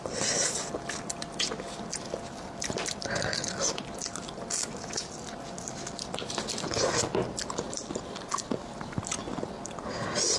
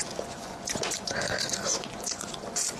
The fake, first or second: second